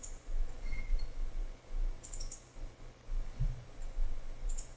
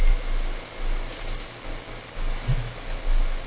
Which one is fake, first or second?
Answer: first